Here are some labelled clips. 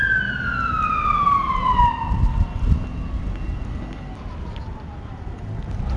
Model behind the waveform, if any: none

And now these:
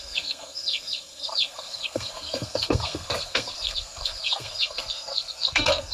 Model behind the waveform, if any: codec, SNAC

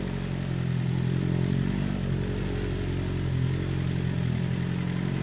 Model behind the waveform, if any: none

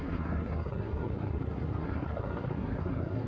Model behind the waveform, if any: codec, SNAC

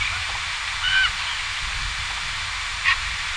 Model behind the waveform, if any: none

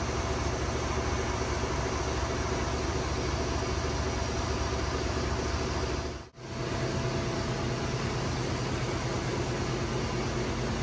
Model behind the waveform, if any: none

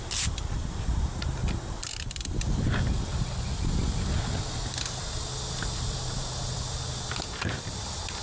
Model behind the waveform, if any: none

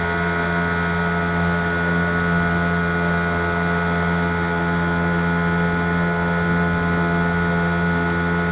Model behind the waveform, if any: none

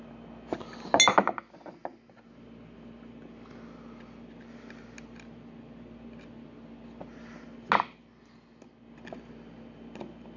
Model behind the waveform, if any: none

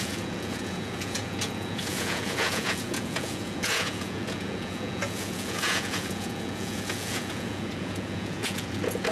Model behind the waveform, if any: vocoder, Vocos